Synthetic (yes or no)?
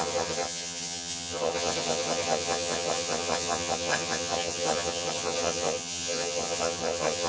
yes